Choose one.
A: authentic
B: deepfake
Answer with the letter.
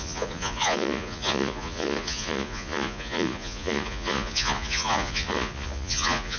B